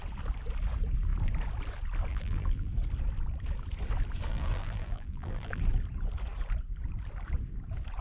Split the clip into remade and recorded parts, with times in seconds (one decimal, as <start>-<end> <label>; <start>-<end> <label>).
0.0-2.1 recorded; 2.1-2.7 remade; 2.7-4.3 recorded; 4.3-5.6 remade; 5.6-8.0 recorded